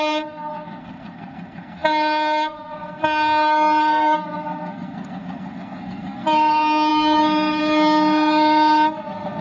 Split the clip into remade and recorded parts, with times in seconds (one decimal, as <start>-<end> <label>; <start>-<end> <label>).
0.0-9.4 remade